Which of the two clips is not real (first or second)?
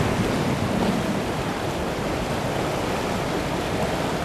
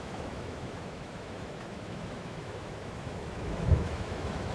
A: second